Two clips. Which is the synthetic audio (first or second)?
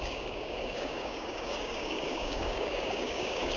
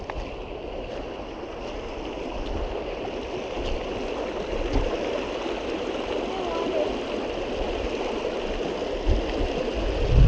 first